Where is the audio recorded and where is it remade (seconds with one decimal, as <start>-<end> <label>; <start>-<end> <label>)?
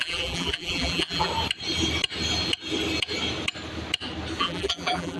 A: 0.0-1.3 remade; 1.3-4.4 recorded; 4.4-5.2 remade